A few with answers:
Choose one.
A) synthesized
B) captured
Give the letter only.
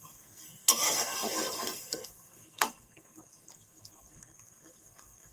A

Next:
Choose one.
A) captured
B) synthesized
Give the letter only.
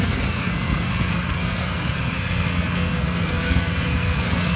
B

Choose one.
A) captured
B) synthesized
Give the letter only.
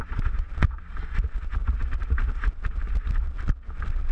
A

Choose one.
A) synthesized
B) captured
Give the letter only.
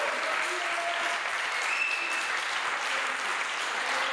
B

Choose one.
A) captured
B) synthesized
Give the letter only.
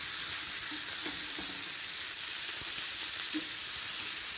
A